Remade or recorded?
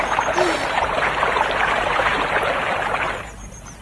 remade